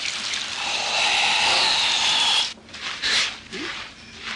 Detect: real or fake fake